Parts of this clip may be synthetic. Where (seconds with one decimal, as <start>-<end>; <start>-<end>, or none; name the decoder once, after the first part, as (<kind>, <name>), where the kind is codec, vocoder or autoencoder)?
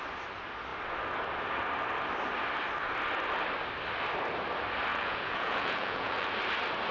4.9-6.3 (vocoder, Vocos)